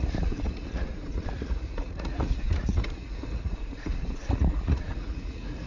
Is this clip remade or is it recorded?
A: remade